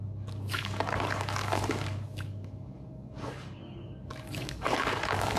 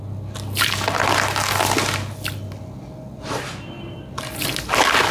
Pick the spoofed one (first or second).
first